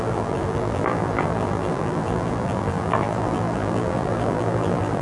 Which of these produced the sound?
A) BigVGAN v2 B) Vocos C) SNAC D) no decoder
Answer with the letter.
A